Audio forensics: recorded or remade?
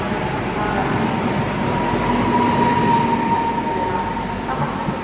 recorded